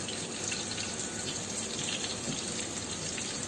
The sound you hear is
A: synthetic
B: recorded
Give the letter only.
B